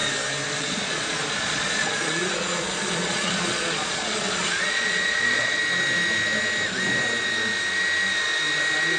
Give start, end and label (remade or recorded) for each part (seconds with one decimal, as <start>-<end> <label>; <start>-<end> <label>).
0.0-0.6 recorded; 0.6-5.6 remade; 5.6-9.0 recorded

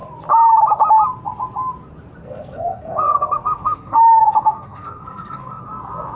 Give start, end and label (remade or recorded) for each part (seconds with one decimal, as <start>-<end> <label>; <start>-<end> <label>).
0.0-2.2 recorded; 2.2-5.6 remade; 5.6-6.2 recorded

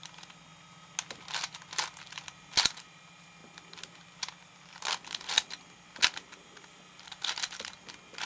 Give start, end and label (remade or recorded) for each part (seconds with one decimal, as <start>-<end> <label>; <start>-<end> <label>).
0.0-8.3 recorded

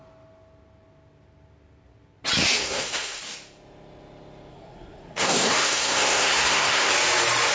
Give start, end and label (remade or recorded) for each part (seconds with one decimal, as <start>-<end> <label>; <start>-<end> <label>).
0.0-2.6 recorded; 2.6-3.2 remade; 3.2-4.5 recorded; 4.5-6.9 remade; 6.9-7.5 recorded

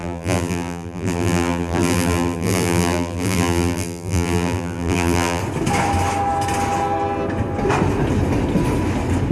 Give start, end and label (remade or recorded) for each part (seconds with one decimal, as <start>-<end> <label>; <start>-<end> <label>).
0.0-5.4 remade; 5.4-9.3 recorded

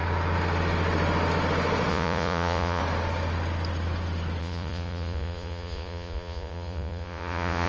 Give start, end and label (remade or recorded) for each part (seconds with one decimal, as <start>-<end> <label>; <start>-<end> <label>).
0.0-1.9 recorded; 1.9-2.8 remade; 2.8-4.4 recorded; 4.4-7.7 remade